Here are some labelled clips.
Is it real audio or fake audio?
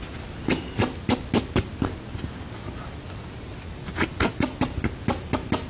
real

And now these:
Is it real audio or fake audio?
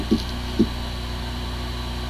real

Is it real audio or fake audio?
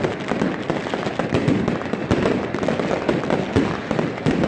real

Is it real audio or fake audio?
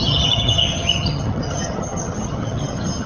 fake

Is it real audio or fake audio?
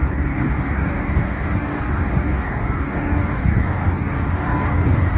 fake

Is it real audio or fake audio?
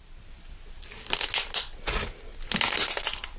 real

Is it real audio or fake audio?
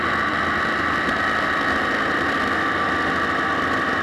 real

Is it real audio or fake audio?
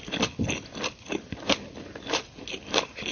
fake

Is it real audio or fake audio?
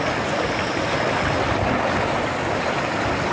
real